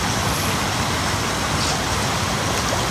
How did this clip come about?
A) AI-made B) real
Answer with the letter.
B